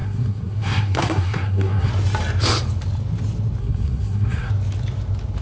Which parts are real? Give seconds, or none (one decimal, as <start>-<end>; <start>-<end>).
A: 1.9-3.6; 4.5-5.4